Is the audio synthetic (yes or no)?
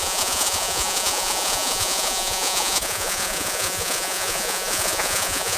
yes